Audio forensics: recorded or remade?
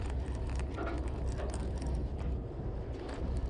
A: recorded